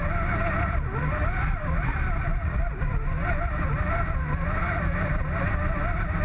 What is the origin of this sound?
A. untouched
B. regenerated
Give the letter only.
A